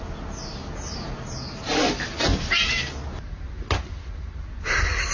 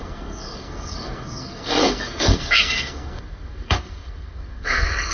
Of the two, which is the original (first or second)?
first